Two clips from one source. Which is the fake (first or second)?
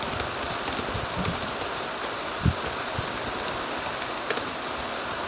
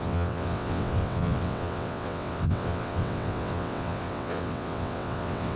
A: second